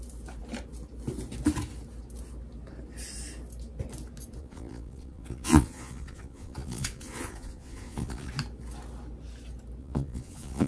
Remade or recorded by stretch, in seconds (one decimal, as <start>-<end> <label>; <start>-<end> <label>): 0.0-4.4 recorded; 4.4-8.3 remade; 8.3-9.8 recorded; 9.8-10.7 remade